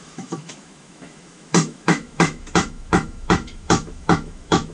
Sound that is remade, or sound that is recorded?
remade